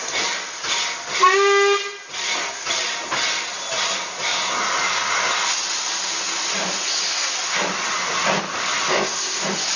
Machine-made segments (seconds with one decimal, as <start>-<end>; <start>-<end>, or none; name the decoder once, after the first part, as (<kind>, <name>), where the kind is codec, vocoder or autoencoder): 8.9-9.4 (codec, ZipCodec)